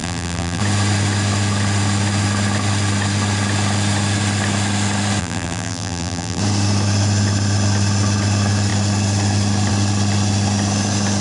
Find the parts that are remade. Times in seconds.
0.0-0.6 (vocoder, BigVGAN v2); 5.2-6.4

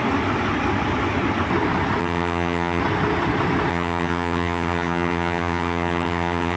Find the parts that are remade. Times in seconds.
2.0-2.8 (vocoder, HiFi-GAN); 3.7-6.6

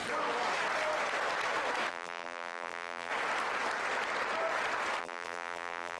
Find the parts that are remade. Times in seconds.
1.9-3.1 (vocoder, BigVGAN v2); 5.0-6.0

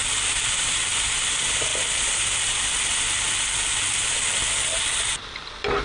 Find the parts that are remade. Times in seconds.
0.6-1.7 (vocoder, BigVGAN v2); 5.1-5.8

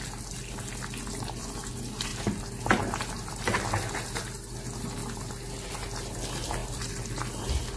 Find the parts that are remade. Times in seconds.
none

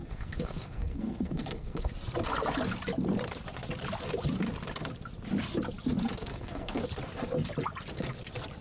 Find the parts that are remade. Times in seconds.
0.0-1.9 (codec, SNAC); 6.2-6.8